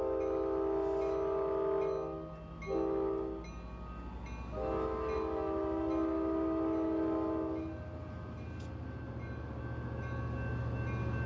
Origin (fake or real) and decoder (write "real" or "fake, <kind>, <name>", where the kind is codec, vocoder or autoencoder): real